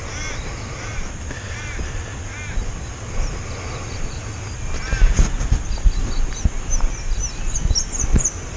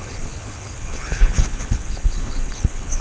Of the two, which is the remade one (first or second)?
second